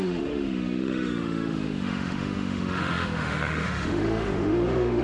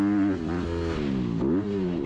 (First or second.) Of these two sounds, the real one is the second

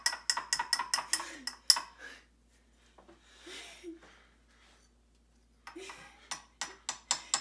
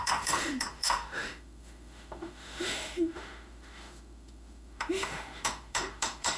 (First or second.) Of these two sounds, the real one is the first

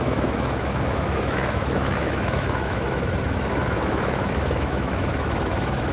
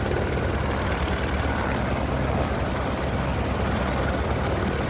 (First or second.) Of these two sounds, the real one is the second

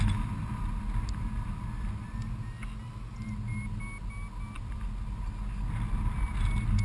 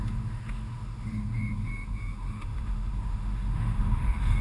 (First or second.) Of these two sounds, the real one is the first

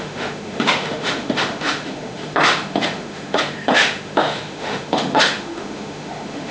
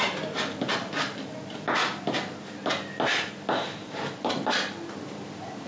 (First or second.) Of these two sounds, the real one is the second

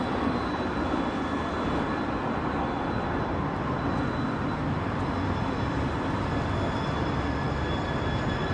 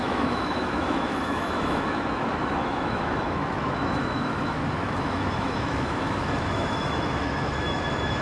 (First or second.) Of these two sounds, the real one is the first